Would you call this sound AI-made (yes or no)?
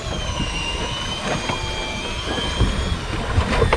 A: no